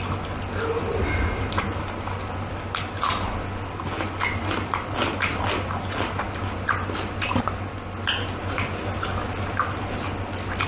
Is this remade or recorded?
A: recorded